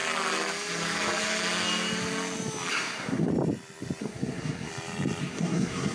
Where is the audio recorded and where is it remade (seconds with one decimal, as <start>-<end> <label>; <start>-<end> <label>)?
0.0-2.7 recorded; 2.7-3.3 remade; 3.3-4.0 recorded; 4.0-4.7 remade; 4.7-5.2 recorded; 5.2-5.9 remade